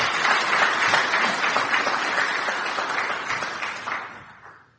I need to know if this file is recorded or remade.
recorded